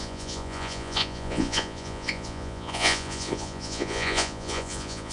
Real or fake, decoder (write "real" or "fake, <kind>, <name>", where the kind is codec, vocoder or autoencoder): fake, vocoder, Vocos